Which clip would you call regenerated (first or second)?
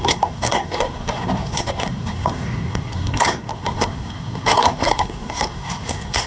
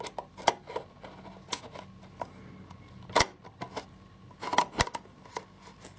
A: first